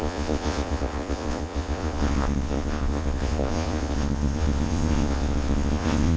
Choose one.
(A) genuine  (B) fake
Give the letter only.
B